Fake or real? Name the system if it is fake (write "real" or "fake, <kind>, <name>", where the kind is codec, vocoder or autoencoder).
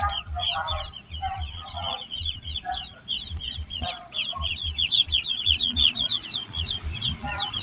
fake, vocoder, Vocos